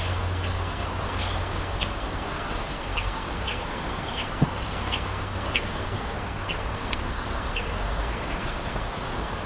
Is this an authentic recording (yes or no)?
no